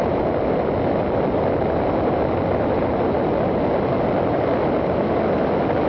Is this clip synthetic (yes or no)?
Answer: no